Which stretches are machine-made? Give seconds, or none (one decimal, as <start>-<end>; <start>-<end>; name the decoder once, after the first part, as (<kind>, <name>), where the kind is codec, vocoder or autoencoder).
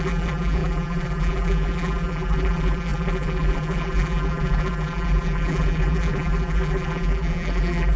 0.0-8.0 (vocoder, BigVGAN v2)